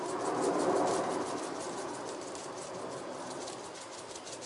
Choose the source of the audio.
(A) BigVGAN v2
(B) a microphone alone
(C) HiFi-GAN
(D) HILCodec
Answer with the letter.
B